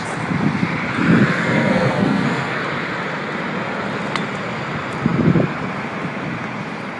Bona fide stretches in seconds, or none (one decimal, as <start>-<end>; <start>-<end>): 0.0-1.3; 2.6-7.0